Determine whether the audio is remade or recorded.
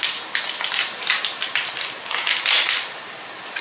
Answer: recorded